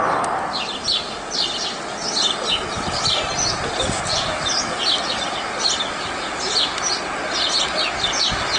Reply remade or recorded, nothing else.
recorded